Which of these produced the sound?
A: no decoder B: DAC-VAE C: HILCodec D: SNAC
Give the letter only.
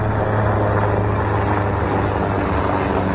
A